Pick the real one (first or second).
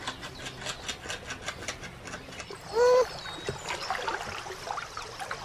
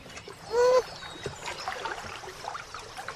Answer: first